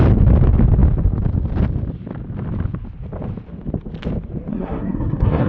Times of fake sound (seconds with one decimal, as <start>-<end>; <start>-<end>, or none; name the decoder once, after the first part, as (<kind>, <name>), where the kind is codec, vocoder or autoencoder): 4.5-5.5 (codec, SNAC)